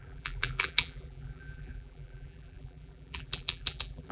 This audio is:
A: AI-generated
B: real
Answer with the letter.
A